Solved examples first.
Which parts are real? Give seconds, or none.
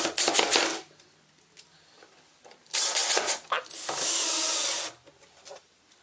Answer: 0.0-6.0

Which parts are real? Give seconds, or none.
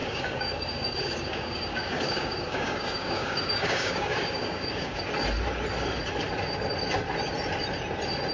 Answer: 5.0-8.3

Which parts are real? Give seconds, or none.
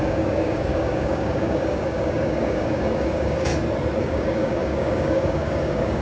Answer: 3.5-4.0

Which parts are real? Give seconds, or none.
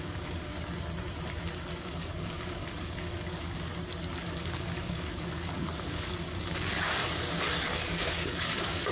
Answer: 0.5-1.8; 3.7-4.4; 7.0-7.6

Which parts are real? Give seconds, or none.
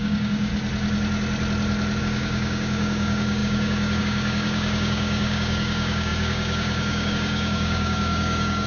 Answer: 0.5-2.0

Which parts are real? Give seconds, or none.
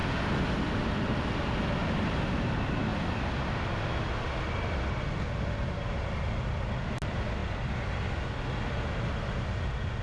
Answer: 0.0-10.0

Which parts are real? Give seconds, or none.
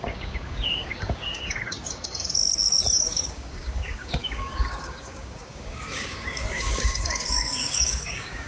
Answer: 2.4-3.1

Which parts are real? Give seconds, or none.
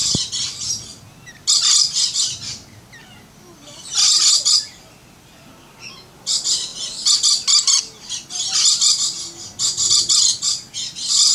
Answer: 0.0-11.3